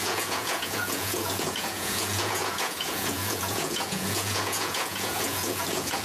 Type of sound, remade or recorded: remade